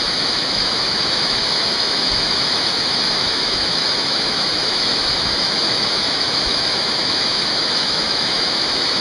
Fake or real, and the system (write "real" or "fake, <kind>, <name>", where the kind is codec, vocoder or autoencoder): fake, autoencoder, DAC-VAE